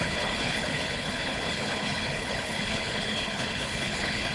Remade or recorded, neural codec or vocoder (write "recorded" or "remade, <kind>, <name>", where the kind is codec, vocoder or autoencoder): remade, codec, HILCodec